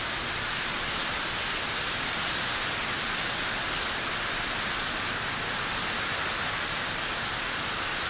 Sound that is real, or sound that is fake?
real